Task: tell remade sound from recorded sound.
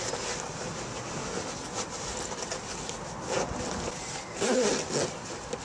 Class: recorded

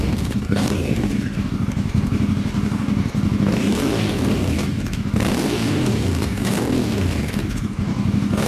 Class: remade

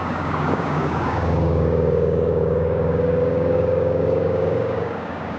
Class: remade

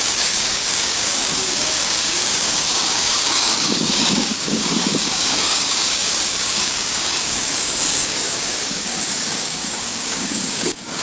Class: remade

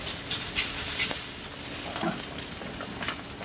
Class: recorded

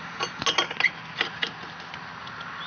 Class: recorded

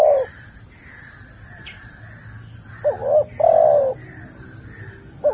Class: recorded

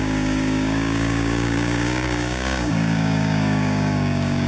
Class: remade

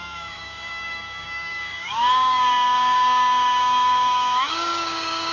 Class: remade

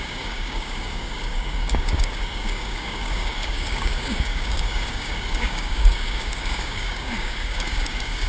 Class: remade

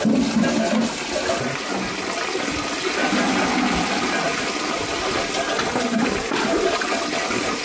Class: recorded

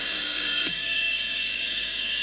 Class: remade